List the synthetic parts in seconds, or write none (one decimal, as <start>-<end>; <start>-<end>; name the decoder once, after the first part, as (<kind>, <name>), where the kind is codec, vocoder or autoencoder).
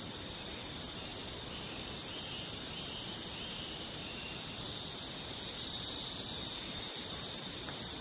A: 0.0-1.1 (vocoder, BigVGAN v2); 1.8-8.0